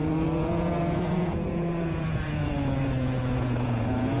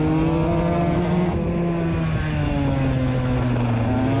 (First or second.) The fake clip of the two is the first